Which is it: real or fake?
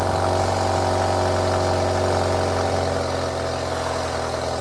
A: real